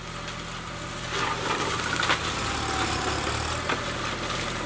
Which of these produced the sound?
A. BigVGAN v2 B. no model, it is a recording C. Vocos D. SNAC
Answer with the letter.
B